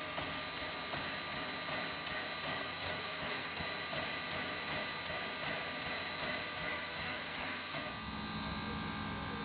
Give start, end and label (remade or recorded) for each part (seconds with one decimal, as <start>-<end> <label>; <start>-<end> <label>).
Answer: 0.0-2.5 recorded; 2.5-3.6 remade; 3.6-6.7 recorded; 6.7-7.8 remade; 7.8-9.4 recorded